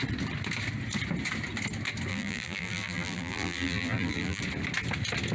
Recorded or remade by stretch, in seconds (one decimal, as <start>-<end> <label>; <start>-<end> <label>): 0.0-2.1 recorded; 2.1-4.4 remade; 4.4-5.3 recorded